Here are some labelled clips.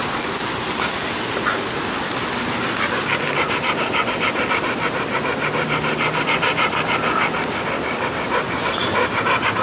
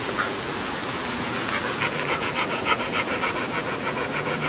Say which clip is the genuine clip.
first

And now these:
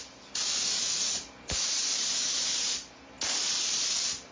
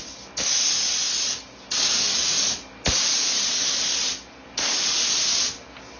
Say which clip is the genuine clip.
second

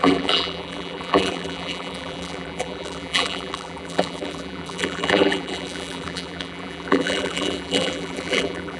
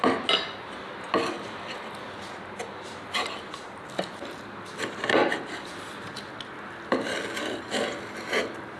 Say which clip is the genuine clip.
second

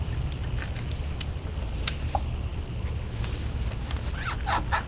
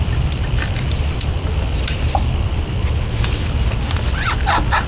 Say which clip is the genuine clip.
first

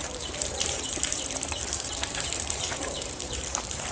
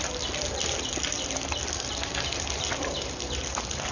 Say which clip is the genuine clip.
second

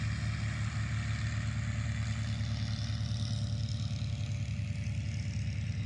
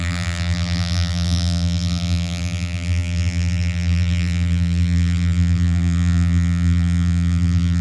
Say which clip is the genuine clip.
first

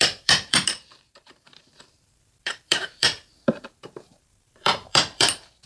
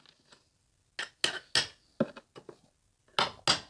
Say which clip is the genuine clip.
second